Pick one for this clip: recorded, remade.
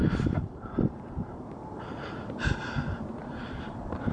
remade